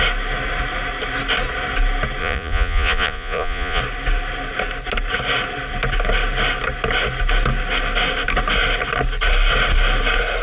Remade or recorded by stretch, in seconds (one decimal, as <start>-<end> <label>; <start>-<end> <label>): 0.0-2.2 recorded; 2.2-3.8 remade; 3.8-10.4 recorded